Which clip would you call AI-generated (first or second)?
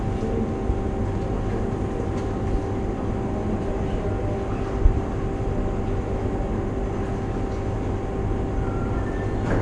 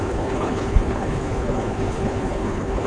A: second